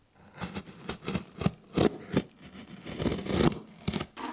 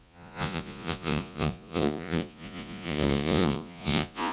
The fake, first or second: second